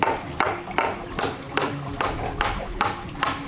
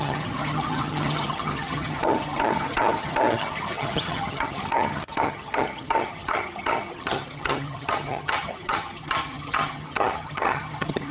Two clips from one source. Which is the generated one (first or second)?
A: second